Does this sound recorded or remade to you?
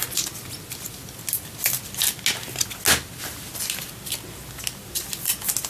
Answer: recorded